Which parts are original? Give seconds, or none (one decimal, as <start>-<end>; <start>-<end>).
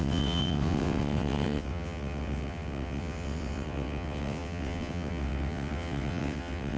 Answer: none